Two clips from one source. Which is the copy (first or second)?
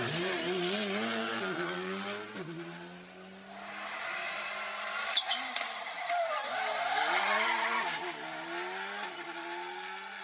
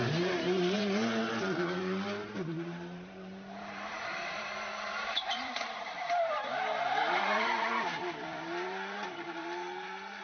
second